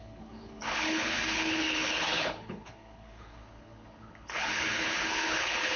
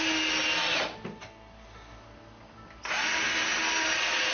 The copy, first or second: first